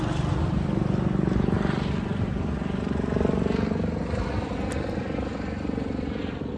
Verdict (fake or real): real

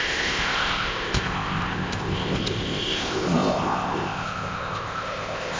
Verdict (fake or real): fake